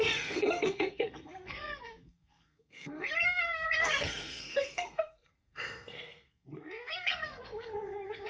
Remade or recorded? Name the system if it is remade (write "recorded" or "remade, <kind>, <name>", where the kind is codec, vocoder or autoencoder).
remade, codec, SNAC